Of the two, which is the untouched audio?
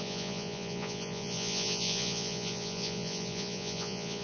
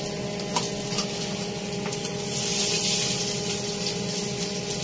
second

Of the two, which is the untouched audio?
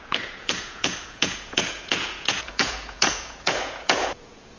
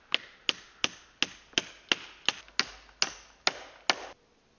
second